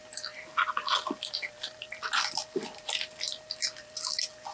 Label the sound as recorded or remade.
recorded